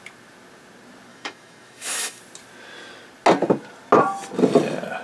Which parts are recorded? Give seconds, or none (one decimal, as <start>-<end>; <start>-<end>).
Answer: 0.0-1.1; 2.2-5.0